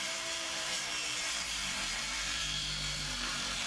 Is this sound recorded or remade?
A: remade